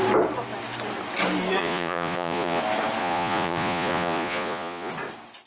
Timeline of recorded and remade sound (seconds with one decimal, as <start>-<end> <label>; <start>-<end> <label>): 0.0-1.6 recorded; 1.6-2.6 remade; 2.6-3.0 recorded; 3.0-4.9 remade; 4.9-5.5 recorded